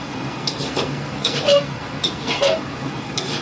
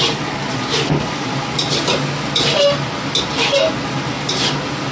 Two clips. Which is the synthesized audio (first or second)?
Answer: first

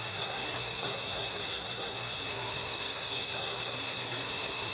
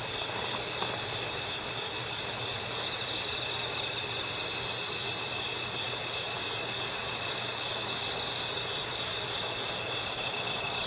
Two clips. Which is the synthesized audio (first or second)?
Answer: first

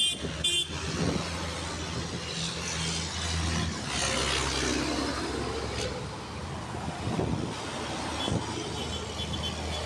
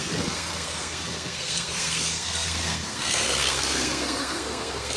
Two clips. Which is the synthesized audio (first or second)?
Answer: second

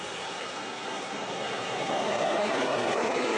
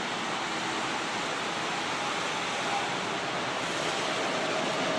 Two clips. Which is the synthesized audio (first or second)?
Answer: first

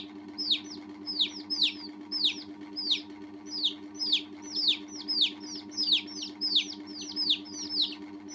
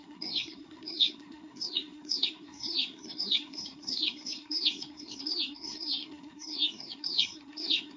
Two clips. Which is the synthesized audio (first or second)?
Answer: second